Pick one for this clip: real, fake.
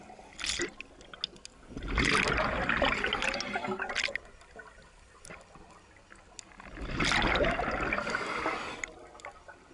real